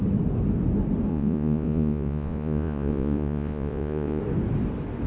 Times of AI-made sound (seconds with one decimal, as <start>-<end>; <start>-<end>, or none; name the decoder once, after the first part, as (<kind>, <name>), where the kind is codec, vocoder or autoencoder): 1.1-4.2 (vocoder, Vocos)